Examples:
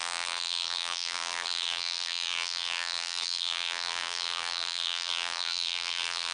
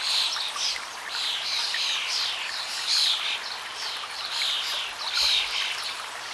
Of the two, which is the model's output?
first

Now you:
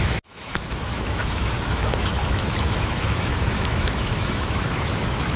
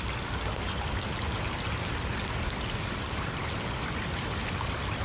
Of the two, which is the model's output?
first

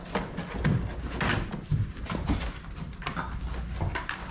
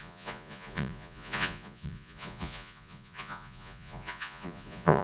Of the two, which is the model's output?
second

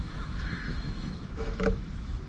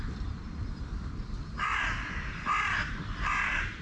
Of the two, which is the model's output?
first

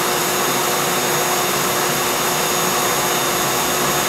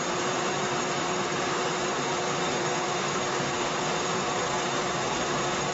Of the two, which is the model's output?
second